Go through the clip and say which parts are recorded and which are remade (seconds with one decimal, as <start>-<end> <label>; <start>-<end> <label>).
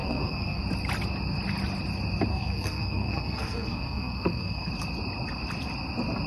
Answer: 0.0-0.6 remade; 0.6-2.3 recorded; 2.3-4.7 remade; 4.7-6.3 recorded